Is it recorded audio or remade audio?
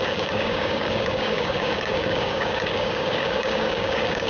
remade